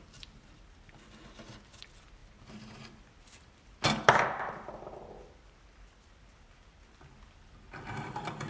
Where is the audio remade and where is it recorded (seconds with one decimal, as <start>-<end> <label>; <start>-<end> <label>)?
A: 0.0-8.5 recorded